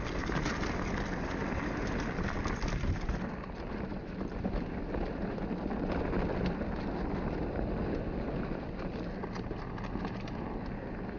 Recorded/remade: recorded